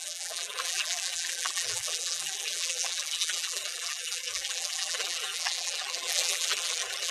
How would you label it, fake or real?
fake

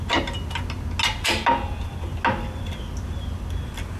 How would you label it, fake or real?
real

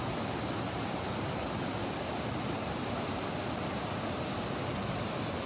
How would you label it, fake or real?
real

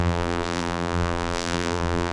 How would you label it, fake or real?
fake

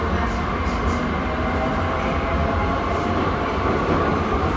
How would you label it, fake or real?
real